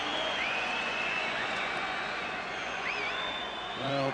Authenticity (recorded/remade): remade